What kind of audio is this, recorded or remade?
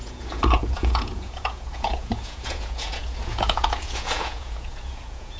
remade